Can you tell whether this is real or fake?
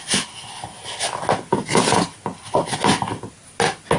real